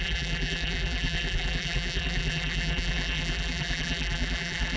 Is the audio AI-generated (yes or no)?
yes